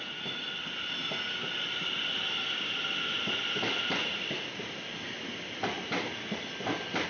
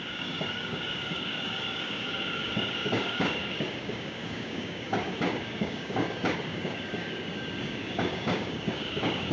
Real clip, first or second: first